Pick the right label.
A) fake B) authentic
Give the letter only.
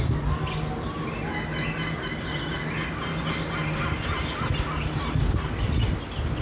B